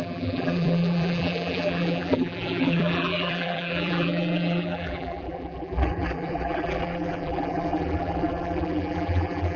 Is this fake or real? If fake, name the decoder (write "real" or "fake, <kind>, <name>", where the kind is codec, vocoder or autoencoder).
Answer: fake, vocoder, BigVGAN v2